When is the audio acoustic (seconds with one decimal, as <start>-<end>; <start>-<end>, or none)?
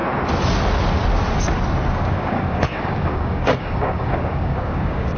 0.0-1.9